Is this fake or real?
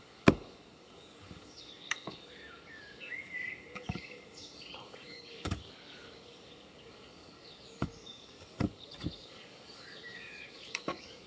fake